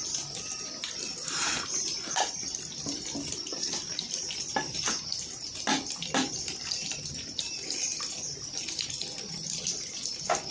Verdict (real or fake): real